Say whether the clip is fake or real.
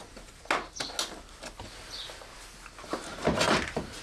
real